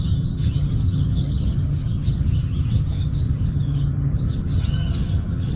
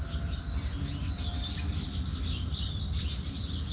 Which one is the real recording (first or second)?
second